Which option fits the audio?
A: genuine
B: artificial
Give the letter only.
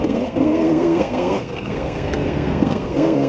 B